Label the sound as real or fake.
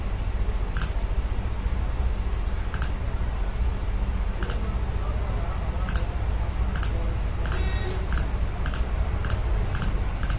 real